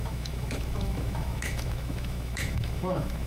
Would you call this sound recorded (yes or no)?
no